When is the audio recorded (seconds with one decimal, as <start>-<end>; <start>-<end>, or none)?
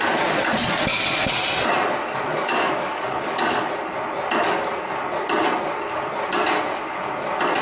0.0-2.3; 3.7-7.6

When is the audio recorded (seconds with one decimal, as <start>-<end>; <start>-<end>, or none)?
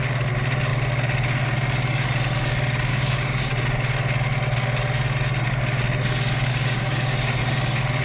0.0-2.9; 3.5-6.5; 7.4-8.0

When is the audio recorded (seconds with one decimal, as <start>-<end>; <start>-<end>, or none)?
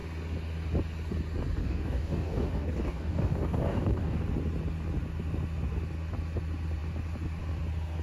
0.0-1.6; 4.2-8.0